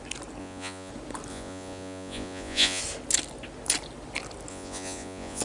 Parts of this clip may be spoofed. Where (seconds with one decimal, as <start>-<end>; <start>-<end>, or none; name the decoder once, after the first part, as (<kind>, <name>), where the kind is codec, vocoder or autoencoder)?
0.4-0.9 (vocoder, Vocos); 1.3-2.8; 4.5-5.4